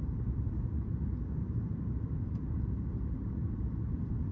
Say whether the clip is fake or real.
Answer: fake